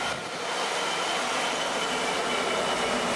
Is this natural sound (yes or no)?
yes